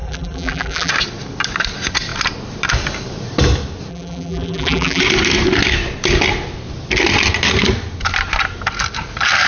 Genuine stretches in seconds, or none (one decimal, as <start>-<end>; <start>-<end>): 0.9-3.9; 5.0-9.5